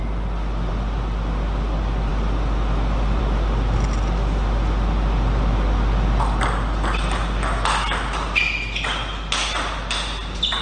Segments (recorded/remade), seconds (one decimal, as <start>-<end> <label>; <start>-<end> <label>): 0.0-10.6 recorded